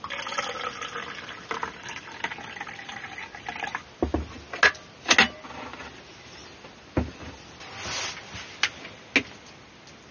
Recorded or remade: recorded